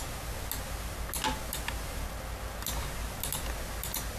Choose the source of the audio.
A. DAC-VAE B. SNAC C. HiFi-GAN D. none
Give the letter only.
D